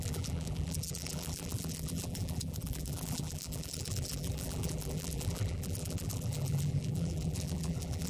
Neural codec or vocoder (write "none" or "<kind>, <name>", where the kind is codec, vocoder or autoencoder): vocoder, BigVGAN v2